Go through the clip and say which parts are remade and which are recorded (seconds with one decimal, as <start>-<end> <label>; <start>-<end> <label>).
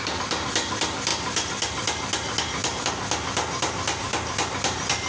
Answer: 0.0-5.1 recorded